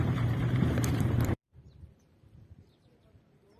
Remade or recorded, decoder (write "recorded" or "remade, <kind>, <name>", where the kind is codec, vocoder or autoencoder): remade, vocoder, BigVGAN v2